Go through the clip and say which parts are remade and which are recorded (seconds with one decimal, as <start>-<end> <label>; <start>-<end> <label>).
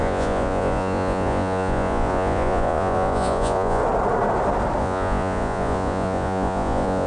0.0-3.8 remade; 3.8-4.8 recorded; 4.8-7.1 remade